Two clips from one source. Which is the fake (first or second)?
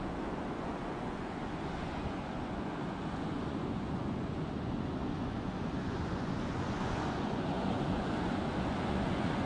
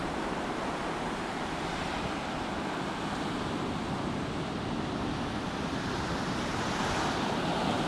first